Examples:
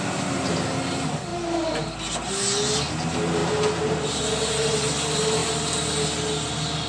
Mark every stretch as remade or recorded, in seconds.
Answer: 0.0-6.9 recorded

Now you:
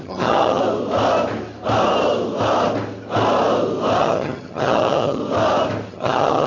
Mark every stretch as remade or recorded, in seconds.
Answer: 0.0-0.6 remade; 0.6-4.0 recorded; 4.0-5.2 remade; 5.2-5.9 recorded; 5.9-6.5 remade

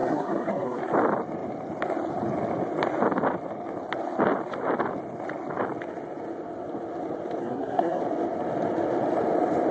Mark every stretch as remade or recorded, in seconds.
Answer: 0.0-0.8 remade; 0.8-7.4 recorded; 7.4-8.0 remade; 8.0-9.7 recorded

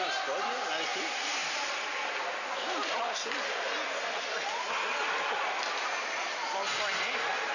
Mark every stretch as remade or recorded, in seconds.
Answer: 0.0-7.5 recorded

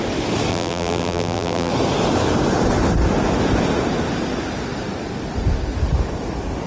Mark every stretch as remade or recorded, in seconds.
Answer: 0.0-0.5 recorded; 0.5-1.7 remade; 1.7-6.7 recorded

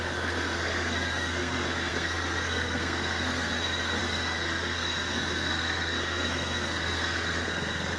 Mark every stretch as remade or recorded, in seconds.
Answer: 0.0-8.0 remade

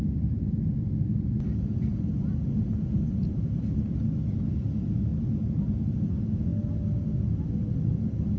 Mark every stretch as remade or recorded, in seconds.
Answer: 0.0-8.4 recorded

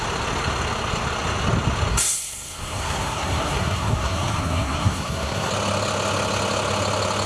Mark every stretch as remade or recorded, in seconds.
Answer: 0.0-1.9 recorded; 1.9-5.5 remade; 5.5-7.3 recorded